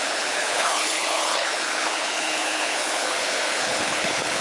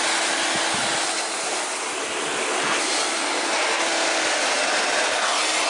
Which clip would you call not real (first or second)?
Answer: first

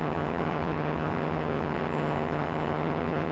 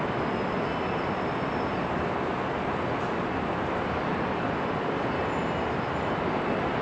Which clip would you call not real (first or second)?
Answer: first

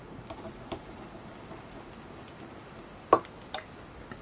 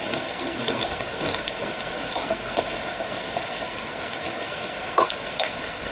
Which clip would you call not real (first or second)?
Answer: second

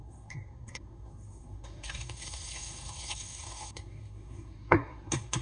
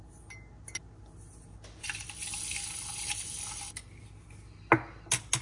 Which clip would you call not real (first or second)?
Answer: first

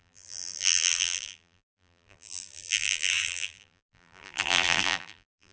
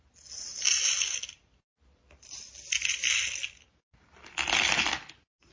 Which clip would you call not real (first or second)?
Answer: first